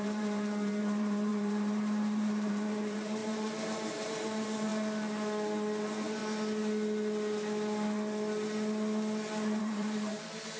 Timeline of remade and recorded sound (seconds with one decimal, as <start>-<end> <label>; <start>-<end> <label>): 0.0-4.7 remade; 4.7-5.8 recorded; 5.8-6.2 remade; 6.2-9.6 recorded; 9.6-10.6 remade